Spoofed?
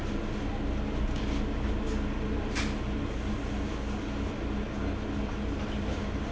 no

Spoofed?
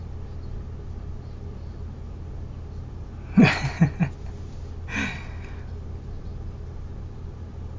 no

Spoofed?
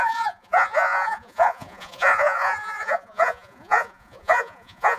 yes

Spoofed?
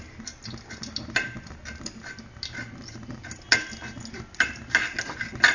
no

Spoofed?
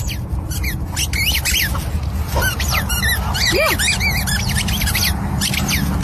no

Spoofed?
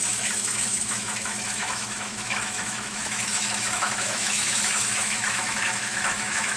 yes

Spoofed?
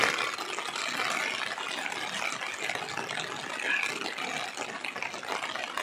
no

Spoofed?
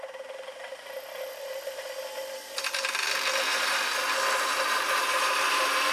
yes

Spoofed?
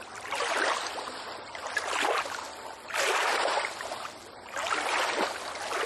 no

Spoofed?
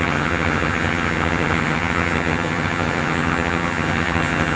yes